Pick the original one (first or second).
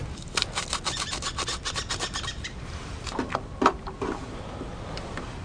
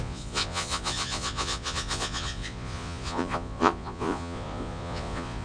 first